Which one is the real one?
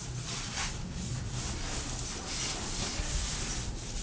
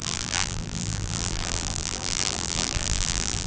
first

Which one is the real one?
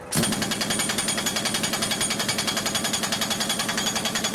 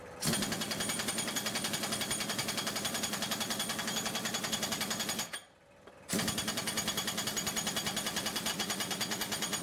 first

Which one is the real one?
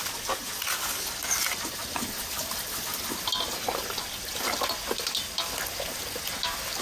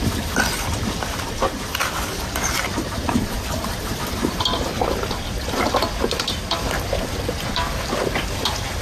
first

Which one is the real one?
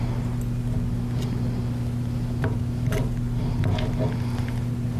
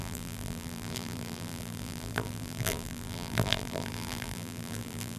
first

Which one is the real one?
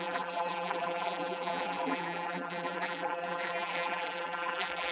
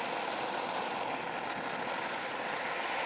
second